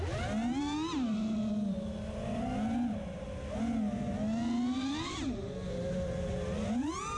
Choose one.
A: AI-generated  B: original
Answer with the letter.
B